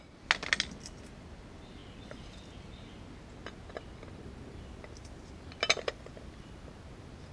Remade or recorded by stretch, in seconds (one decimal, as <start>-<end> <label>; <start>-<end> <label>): 0.0-7.3 recorded